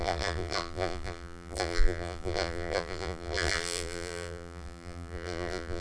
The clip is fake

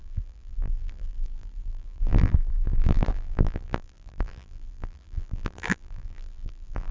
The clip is fake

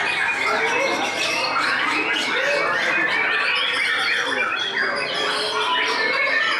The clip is real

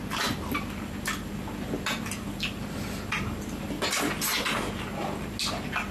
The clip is real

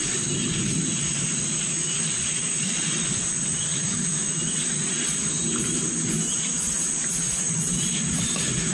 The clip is fake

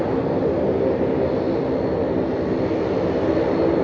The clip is real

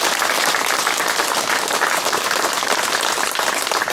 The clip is real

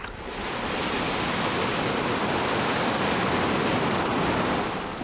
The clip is real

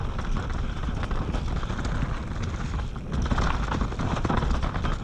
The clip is real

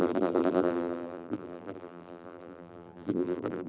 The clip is fake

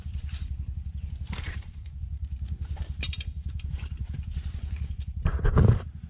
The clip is fake